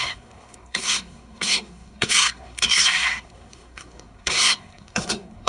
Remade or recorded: remade